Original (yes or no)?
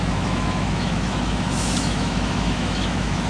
no